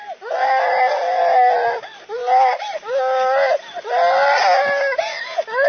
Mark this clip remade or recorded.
recorded